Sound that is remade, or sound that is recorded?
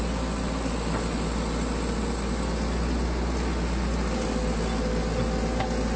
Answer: recorded